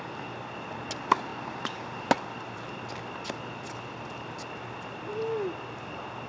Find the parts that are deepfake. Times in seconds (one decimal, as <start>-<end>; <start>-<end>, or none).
none